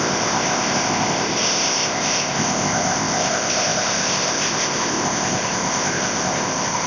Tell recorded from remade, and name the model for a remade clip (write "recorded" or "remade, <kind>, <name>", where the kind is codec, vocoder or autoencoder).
remade, codec, ZipCodec